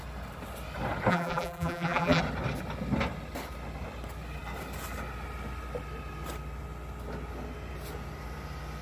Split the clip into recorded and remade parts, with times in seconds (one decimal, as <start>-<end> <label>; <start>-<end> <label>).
0.0-1.1 recorded; 1.1-2.2 remade; 2.2-8.8 recorded